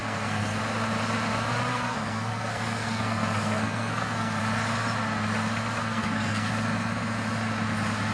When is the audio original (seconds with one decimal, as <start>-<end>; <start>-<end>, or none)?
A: 0.6-1.7; 4.4-5.8; 6.5-8.1